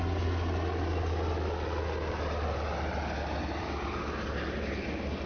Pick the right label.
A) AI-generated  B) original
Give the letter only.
B